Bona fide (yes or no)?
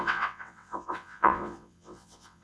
no